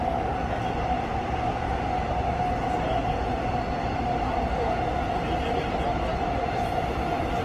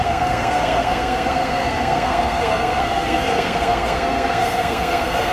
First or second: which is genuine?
first